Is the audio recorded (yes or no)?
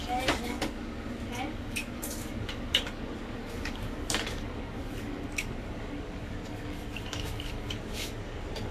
no